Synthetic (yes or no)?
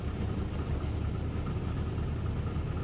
no